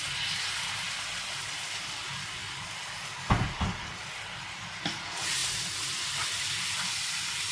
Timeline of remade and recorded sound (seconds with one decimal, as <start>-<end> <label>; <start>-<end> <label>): 0.0-2.4 remade; 2.4-4.8 recorded; 4.8-5.4 remade; 5.4-6.1 recorded; 6.1-7.5 remade

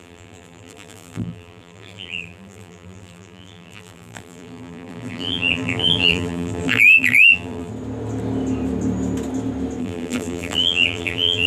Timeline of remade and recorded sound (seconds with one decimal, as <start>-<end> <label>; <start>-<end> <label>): 0.0-7.7 remade; 7.7-9.8 recorded; 9.8-11.5 remade

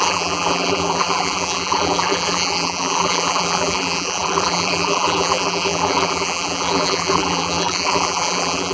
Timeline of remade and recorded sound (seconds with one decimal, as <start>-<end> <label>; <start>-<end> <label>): 0.0-8.7 remade

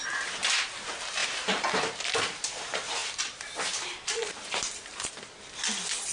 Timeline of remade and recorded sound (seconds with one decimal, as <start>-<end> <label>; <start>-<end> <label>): 0.0-1.2 recorded; 1.2-2.6 remade; 2.6-3.0 recorded; 3.0-5.1 remade; 5.1-6.1 recorded

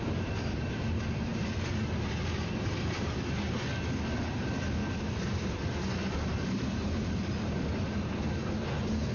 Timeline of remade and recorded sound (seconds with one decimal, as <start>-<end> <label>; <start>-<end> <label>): 0.0-4.8 recorded; 4.8-5.5 remade; 5.5-9.1 recorded

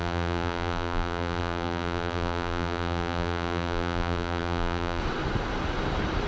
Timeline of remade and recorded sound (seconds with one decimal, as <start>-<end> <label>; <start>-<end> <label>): 0.0-5.0 remade; 5.0-6.3 recorded

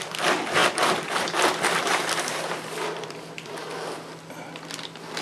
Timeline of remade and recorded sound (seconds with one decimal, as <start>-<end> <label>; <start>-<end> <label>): 0.0-0.6 recorded; 0.6-3.7 remade; 3.7-5.2 recorded